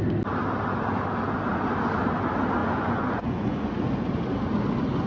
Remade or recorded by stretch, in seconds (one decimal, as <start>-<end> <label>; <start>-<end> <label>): 0.0-2.6 recorded; 2.6-3.7 remade; 3.7-5.1 recorded